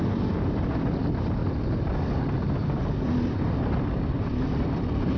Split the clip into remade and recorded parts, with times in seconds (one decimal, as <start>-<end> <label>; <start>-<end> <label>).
0.0-5.2 recorded